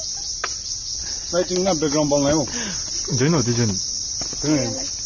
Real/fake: real